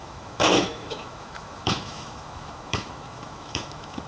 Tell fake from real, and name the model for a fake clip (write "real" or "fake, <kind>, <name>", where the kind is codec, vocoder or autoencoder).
fake, autoencoder, DAC-VAE